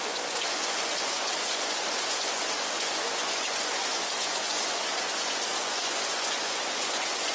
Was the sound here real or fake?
fake